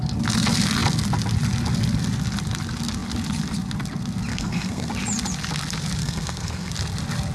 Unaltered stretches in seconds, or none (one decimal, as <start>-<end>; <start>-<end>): 0.0-4.3; 4.9-6.0; 6.7-7.3